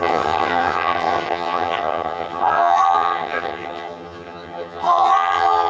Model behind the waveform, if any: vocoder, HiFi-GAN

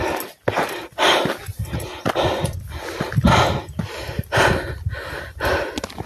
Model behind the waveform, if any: none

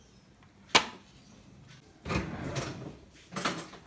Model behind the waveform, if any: none